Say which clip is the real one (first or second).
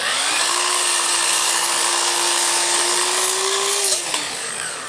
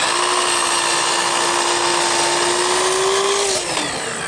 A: second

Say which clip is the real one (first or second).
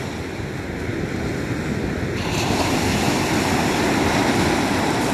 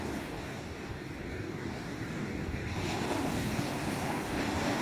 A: first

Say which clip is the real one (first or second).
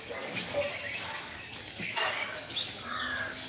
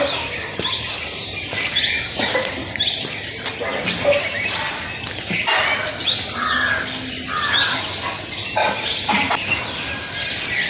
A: second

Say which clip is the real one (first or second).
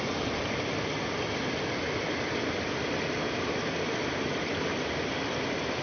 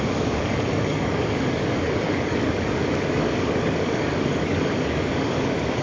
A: first